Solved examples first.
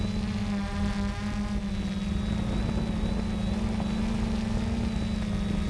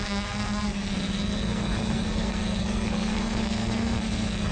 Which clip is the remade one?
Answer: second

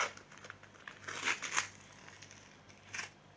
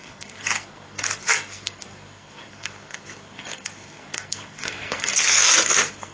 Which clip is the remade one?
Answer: second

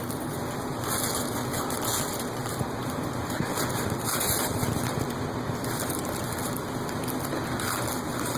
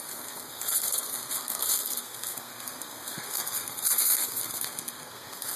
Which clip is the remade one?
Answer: second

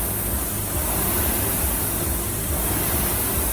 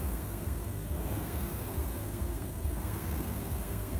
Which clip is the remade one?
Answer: second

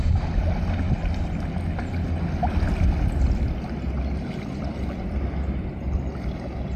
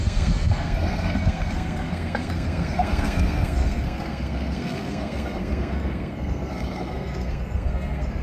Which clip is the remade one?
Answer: second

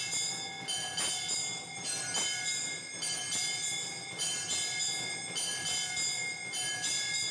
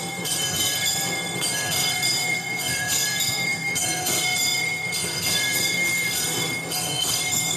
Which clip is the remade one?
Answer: second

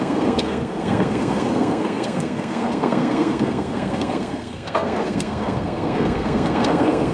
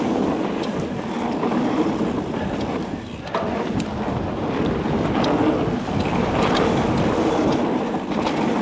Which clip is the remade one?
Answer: first